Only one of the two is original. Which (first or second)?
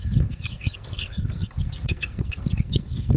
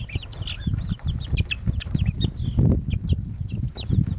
second